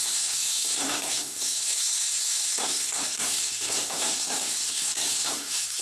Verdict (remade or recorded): remade